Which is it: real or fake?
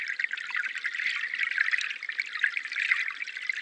real